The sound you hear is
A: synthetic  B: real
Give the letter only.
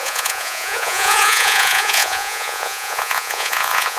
A